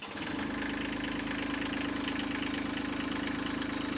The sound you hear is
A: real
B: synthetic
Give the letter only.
A